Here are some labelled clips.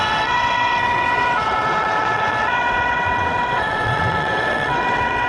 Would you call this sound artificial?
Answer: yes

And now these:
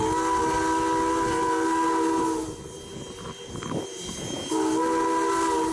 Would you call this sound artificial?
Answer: no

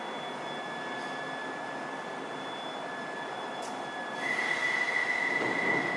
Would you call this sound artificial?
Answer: no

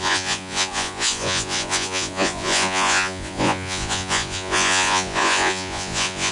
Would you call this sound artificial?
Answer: yes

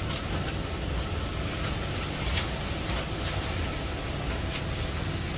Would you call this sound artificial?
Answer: no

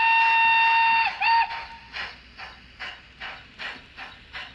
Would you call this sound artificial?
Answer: no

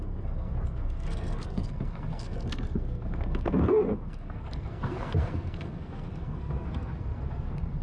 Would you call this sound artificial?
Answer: yes